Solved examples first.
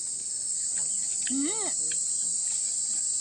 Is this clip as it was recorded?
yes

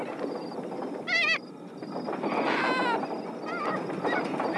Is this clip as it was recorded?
no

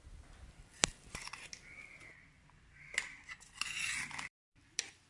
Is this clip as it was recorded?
no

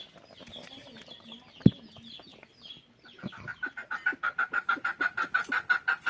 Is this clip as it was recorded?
yes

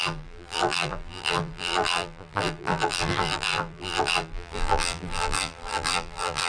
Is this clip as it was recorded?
no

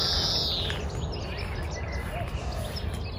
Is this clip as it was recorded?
yes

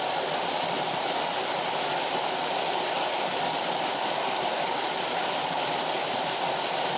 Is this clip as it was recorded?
yes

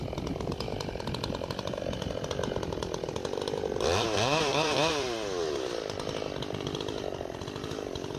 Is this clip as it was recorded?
no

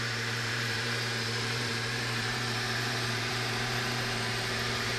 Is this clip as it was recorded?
no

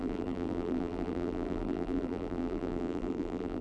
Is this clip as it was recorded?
no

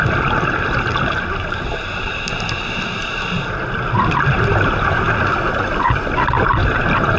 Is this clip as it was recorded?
yes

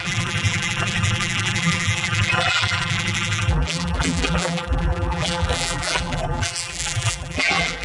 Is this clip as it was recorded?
no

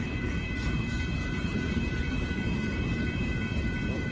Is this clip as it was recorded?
no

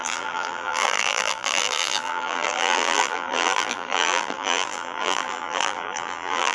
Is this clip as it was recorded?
no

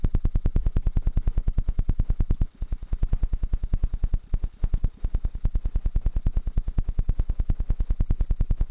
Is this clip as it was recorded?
yes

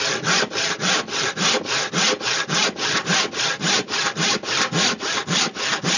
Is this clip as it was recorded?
yes